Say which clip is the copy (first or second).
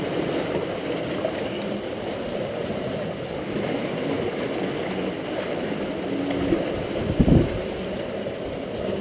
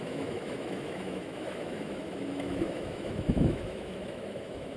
second